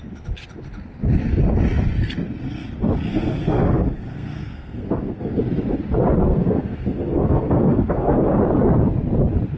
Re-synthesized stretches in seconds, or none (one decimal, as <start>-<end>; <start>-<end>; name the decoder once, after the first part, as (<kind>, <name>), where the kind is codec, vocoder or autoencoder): 3.1-5.4 (codec, SNAC); 6.3-8.4